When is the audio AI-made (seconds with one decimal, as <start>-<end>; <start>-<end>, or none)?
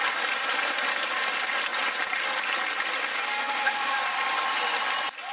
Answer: 3.1-4.0